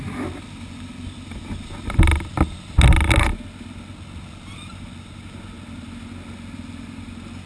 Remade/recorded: recorded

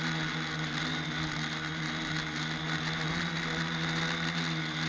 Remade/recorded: recorded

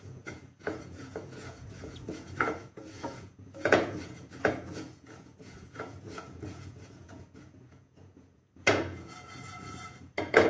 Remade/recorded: remade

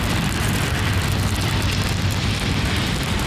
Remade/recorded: remade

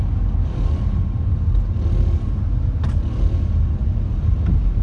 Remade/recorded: recorded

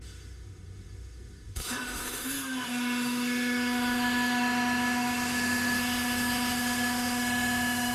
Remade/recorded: remade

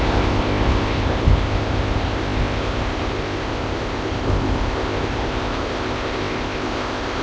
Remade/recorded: remade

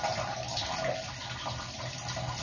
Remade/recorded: recorded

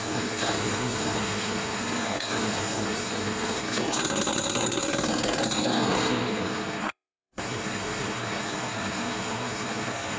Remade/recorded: remade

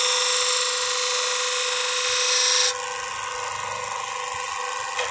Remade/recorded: recorded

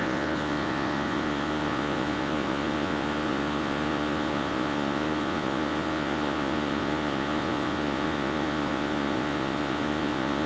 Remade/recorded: remade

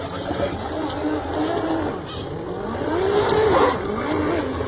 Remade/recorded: recorded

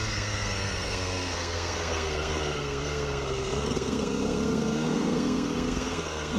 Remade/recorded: remade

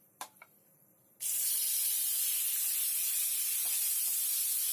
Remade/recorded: remade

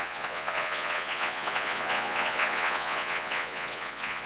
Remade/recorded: remade